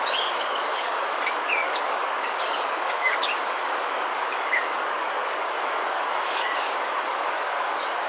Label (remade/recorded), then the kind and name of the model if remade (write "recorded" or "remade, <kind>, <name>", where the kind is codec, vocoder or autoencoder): remade, codec, DAC